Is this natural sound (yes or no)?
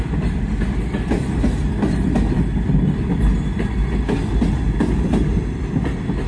yes